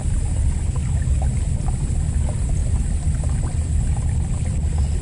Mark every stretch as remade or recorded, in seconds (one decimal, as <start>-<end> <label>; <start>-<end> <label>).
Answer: 0.0-5.0 recorded